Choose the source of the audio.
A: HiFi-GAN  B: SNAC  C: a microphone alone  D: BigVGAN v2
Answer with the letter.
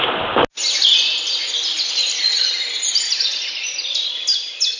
C